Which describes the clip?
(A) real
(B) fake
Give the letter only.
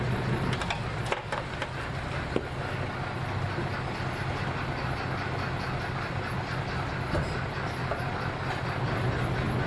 A